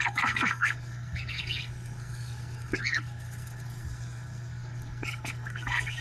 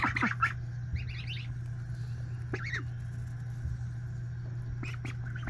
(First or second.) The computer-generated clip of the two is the first